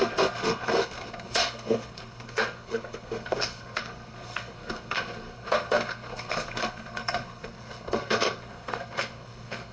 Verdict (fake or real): fake